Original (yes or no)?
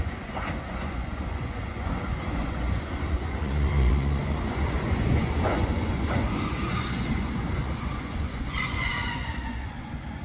no